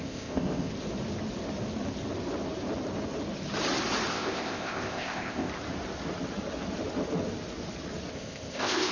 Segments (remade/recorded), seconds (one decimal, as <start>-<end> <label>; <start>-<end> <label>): 0.0-0.7 remade; 0.7-4.1 recorded; 4.1-5.5 remade; 5.5-8.1 recorded; 8.1-8.9 remade